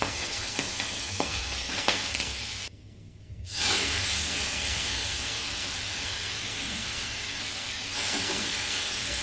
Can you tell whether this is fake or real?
fake